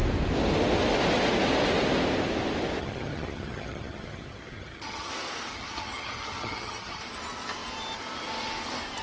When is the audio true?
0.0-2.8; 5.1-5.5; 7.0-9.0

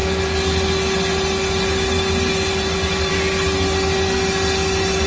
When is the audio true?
0.0-5.1

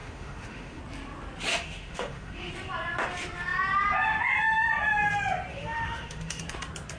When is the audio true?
0.8-1.5; 2.5-5.5; 6.4-7.0

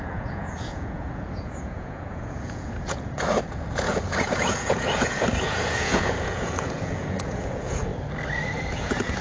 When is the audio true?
7.9-8.7